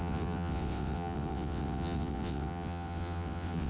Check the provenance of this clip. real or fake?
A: fake